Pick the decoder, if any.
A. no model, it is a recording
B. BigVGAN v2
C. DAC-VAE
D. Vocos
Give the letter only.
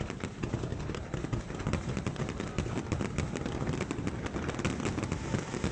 A